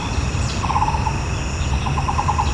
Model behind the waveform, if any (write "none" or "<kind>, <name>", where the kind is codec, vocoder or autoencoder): none